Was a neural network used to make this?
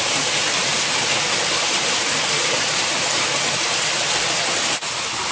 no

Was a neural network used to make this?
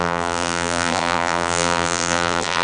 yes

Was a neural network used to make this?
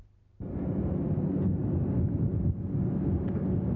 no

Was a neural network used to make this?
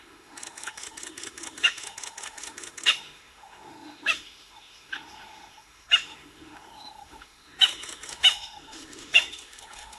yes